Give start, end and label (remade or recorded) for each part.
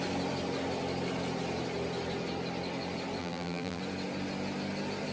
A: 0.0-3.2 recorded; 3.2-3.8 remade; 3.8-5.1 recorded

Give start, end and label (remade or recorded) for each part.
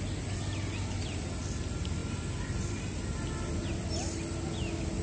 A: 0.0-5.0 recorded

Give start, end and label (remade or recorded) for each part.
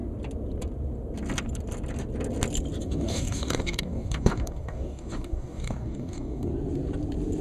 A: 0.0-2.8 recorded; 2.8-6.5 remade; 6.5-7.4 recorded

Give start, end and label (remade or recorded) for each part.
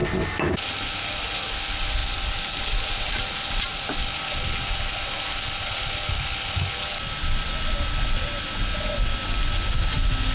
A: 0.0-10.3 recorded